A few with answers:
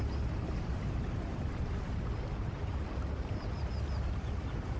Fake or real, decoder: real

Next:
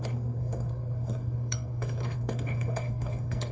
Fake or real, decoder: fake, codec, SNAC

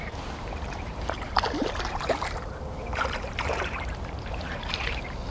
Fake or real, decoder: fake, vocoder, BigVGAN v2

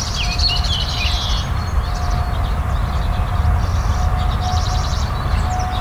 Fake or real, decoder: real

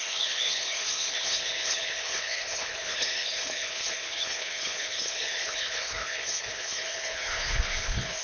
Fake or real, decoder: fake, codec, HILCodec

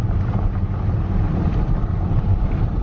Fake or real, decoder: fake, vocoder, BigVGAN v2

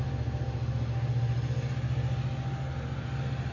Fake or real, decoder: real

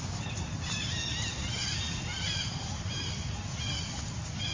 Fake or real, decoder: real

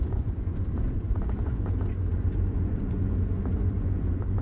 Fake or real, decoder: fake, vocoder, Vocos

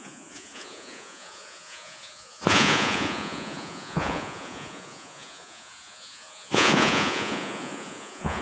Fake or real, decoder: fake, vocoder, Vocos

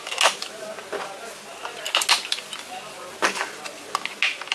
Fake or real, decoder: real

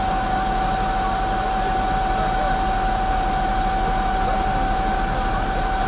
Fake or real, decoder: real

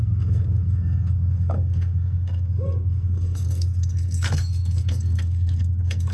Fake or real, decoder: fake, codec, SNAC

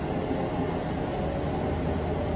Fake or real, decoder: real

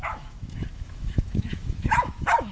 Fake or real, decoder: fake, autoencoder, DAC-VAE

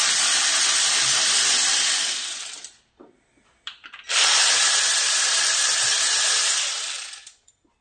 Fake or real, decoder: real